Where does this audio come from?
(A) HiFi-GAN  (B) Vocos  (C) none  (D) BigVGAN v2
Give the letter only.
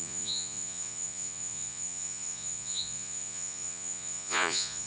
B